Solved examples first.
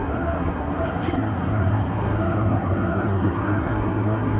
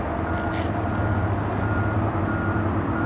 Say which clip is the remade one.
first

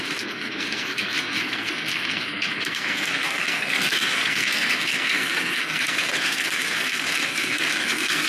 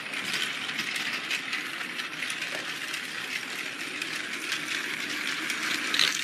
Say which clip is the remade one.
first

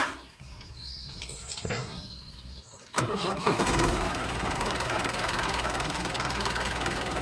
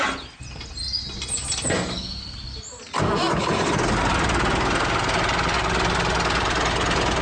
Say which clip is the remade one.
first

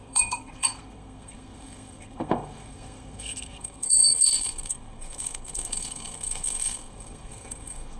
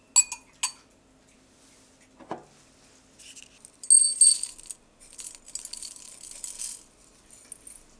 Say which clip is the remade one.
first